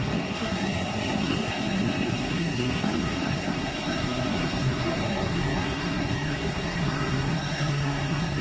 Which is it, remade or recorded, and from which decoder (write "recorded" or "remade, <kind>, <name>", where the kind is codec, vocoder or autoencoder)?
remade, codec, SNAC